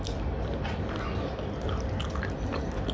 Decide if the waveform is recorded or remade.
recorded